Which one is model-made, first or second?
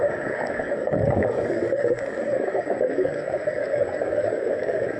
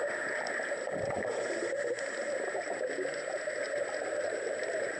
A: first